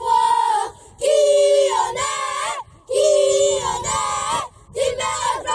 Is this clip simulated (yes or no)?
no